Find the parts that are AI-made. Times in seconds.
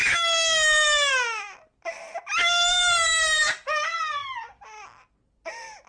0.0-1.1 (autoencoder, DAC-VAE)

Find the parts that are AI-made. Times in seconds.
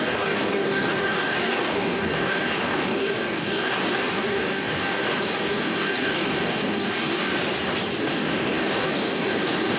0.0-7.3 (codec, DAC); 8.0-9.8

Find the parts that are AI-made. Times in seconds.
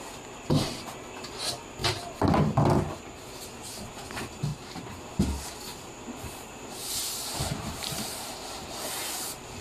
4.5-5.0 (vocoder, BigVGAN v2); 6.8-8.9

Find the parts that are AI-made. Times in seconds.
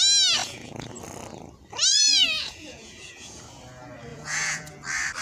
0.4-0.9 (vocoder, Vocos); 1.9-3.4; 4.1-4.7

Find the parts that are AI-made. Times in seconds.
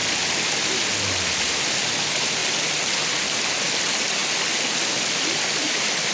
none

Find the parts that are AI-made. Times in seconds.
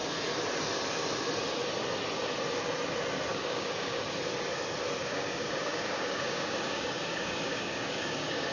3.3-4.0 (codec, DAC); 5.0-8.5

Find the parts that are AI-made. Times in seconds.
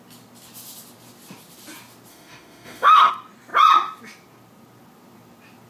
2.1-3.1 (autoencoder, DAC-VAE)